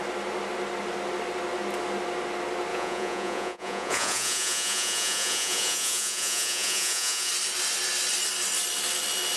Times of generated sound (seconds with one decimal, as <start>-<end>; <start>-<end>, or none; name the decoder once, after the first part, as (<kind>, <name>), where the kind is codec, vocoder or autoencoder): 2.7-7.3 (vocoder, Vocos)